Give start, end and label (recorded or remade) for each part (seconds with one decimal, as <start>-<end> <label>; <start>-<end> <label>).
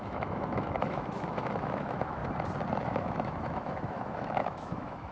0.0-2.2 remade; 2.2-2.8 recorded; 2.8-5.1 remade